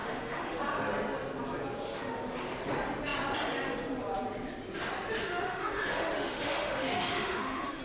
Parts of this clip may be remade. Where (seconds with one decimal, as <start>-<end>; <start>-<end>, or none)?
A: 0.0-0.6; 5.2-7.8